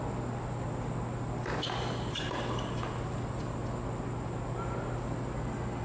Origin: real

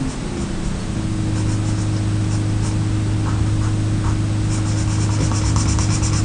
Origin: real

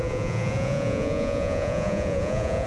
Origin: fake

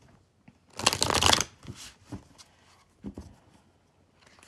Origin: real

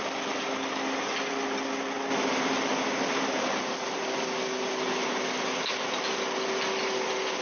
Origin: real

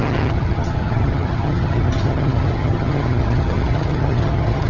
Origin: fake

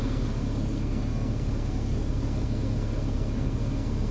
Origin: fake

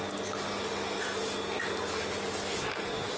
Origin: real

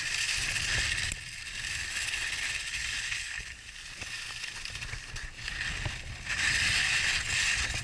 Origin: real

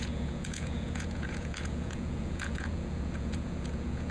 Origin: fake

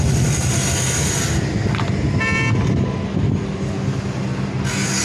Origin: real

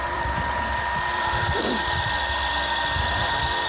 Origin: fake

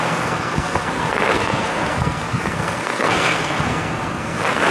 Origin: fake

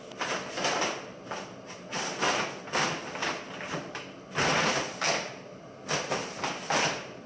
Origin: real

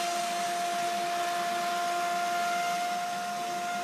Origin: real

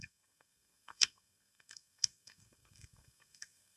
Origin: fake